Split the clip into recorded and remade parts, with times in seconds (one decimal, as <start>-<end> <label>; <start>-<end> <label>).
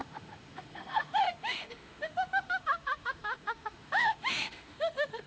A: 0.0-5.3 remade